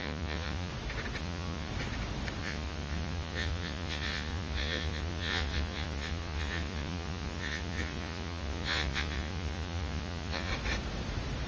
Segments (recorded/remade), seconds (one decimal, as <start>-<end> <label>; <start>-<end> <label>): 0.0-0.7 remade; 0.7-1.2 recorded; 1.2-1.7 remade; 1.7-2.4 recorded; 2.4-10.5 remade; 10.5-11.5 recorded